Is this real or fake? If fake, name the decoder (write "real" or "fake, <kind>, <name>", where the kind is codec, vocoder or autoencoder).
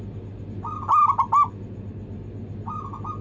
real